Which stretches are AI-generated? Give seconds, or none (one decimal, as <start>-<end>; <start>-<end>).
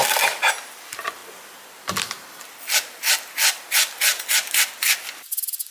none